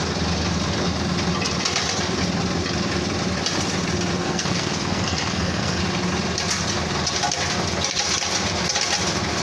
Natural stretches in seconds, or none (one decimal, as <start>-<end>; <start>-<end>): 0.0-4.2; 5.8-9.4